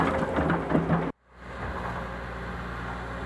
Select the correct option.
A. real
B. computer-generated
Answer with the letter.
A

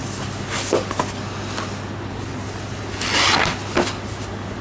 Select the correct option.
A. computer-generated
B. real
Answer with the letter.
B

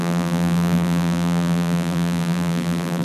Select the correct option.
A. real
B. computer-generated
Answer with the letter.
B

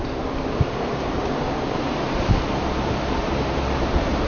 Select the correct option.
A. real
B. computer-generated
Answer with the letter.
B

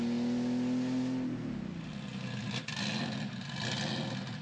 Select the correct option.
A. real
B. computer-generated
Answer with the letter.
A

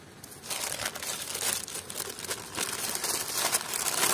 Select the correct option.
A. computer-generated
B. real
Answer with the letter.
B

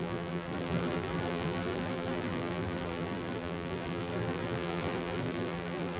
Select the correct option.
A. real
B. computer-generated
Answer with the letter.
B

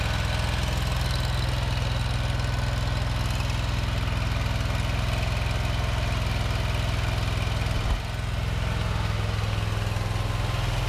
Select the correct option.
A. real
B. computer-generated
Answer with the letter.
A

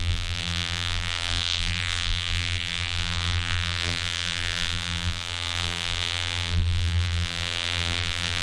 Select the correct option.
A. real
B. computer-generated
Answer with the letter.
B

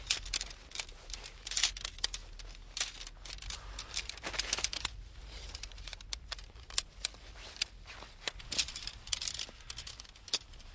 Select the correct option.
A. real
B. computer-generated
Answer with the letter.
A